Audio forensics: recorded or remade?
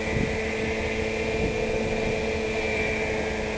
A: recorded